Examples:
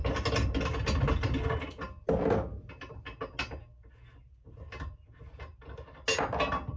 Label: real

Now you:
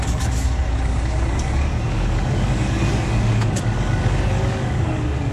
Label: fake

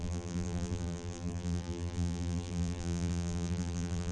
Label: fake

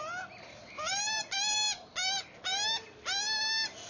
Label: real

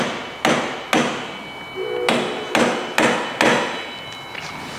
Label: real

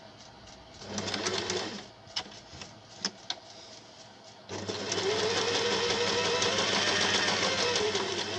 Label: real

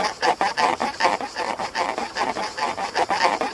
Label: fake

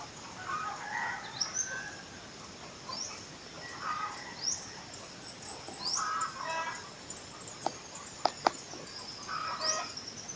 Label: real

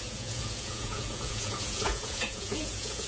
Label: fake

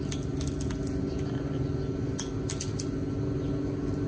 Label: real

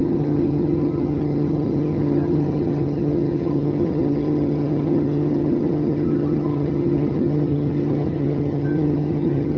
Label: fake